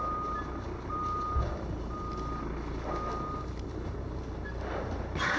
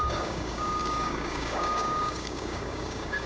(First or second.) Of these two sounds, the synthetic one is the second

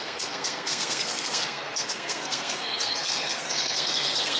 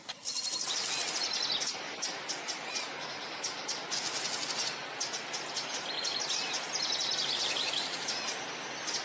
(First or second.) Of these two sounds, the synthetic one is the first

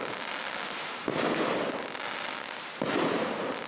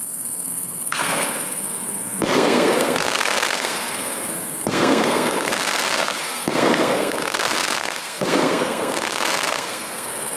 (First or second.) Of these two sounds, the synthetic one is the second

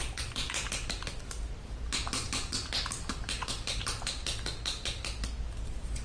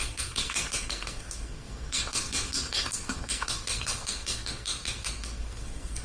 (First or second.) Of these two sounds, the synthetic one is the second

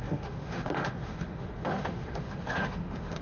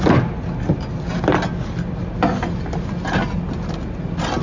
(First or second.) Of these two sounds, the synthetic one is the first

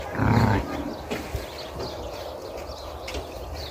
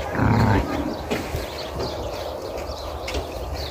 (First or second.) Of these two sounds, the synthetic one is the second